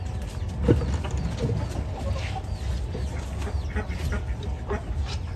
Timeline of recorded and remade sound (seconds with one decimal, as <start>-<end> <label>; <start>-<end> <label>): 0.0-5.4 recorded

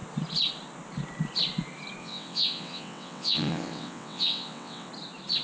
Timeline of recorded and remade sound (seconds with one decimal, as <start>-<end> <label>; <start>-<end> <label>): 0.0-2.0 recorded; 2.0-4.9 remade; 4.9-5.4 recorded

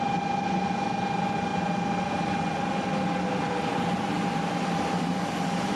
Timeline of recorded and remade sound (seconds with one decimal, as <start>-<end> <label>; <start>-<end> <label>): 0.0-5.8 recorded

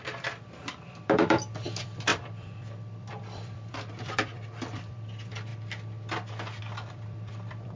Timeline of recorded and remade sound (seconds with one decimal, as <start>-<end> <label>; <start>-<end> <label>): 0.0-5.5 remade; 5.5-6.6 recorded; 6.6-7.8 remade

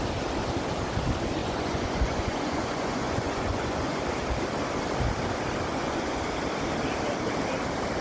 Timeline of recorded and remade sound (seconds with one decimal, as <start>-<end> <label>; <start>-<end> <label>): 0.0-1.4 recorded; 1.4-4.0 remade; 4.0-5.7 recorded; 5.7-6.2 remade; 6.2-8.0 recorded

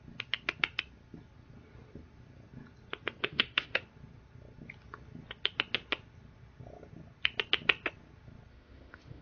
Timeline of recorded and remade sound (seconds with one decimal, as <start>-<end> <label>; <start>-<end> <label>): 0.0-3.2 recorded; 3.2-3.8 remade; 3.8-8.5 recorded; 8.5-9.2 remade

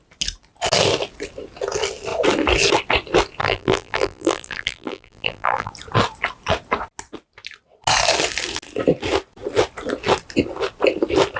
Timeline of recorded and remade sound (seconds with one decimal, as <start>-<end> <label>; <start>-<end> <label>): 0.0-3.4 recorded; 3.4-5.7 remade; 5.7-11.4 recorded

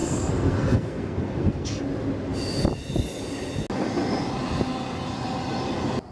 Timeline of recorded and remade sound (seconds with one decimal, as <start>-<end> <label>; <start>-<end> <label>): 0.0-1.8 remade; 1.8-6.1 recorded